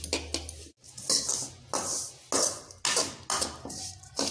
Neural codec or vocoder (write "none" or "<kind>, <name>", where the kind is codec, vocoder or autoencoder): none